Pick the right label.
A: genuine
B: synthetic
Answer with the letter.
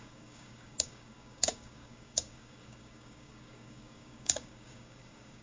B